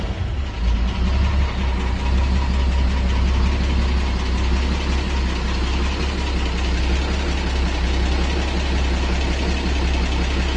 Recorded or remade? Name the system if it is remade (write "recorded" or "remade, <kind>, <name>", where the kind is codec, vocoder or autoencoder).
recorded